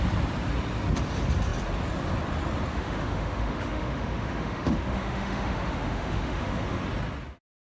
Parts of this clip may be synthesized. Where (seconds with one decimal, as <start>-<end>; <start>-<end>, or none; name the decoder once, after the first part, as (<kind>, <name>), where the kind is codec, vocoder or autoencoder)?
2.7-6.8 (autoencoder, DAC-VAE)